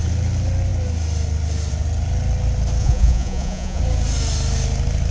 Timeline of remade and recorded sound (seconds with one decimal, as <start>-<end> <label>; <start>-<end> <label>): 0.0-2.8 recorded; 2.8-3.8 remade; 3.8-5.1 recorded